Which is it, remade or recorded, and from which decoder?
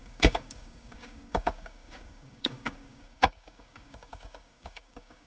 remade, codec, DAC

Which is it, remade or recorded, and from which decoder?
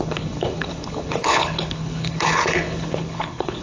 remade, codec, HILCodec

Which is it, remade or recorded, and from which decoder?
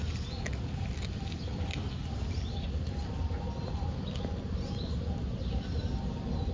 recorded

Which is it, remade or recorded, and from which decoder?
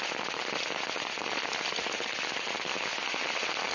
recorded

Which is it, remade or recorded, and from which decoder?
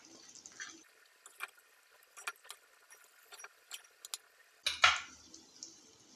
recorded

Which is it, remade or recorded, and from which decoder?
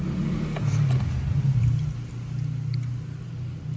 recorded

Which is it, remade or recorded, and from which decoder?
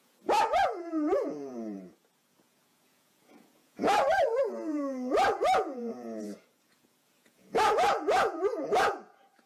remade, vocoder, Vocos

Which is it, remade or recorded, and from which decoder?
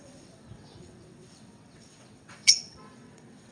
remade, vocoder, WaveNeXt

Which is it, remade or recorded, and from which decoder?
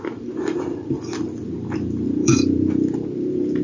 remade, vocoder, BigVGAN v2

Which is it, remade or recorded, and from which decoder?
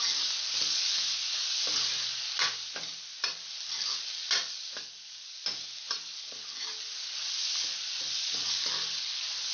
recorded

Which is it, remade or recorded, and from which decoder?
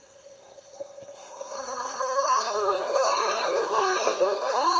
remade, codec, SNAC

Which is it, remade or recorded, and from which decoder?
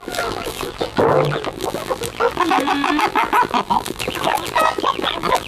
remade, vocoder, BigVGAN v2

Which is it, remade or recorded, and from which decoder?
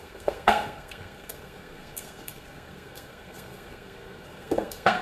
remade, codec, SNAC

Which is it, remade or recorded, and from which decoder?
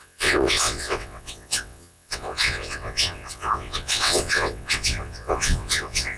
remade, vocoder, WaveNeXt